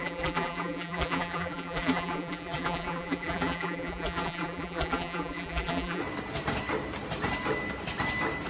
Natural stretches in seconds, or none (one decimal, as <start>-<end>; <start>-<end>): 6.0-8.5